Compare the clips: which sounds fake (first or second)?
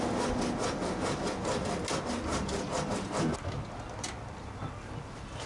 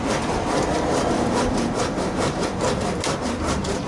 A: second